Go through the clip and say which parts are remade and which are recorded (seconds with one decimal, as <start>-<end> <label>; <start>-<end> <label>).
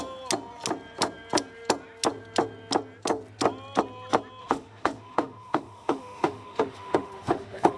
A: 0.0-4.4 recorded; 4.4-7.8 remade